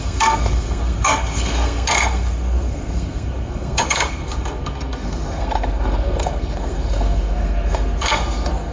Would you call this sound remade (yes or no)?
yes